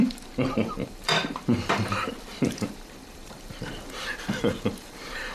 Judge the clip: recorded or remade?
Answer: remade